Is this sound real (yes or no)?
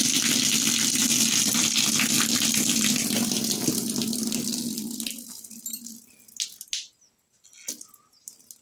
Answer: yes